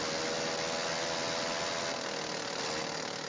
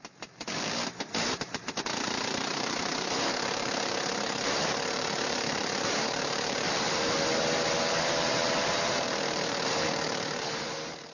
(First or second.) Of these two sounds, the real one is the first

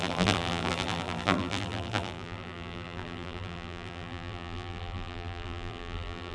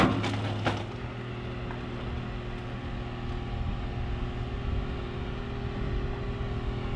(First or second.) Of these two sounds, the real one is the second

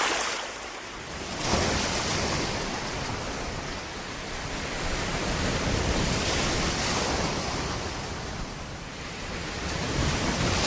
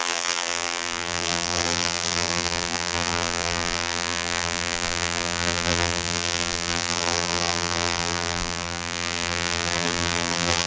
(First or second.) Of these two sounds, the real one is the first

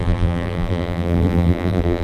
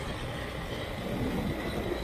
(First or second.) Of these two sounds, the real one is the second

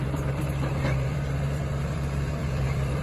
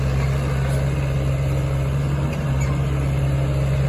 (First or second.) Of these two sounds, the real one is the second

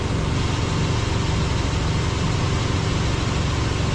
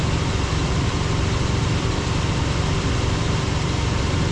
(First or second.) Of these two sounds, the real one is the first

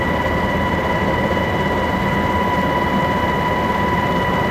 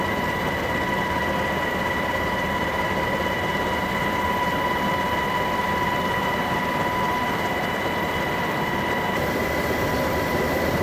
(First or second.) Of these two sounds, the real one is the first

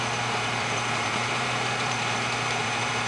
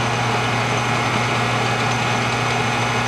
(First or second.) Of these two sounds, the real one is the second